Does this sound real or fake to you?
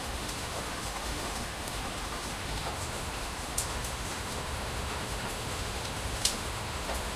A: fake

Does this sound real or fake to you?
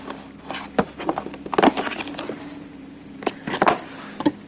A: real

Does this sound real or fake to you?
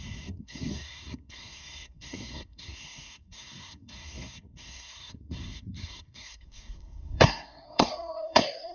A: fake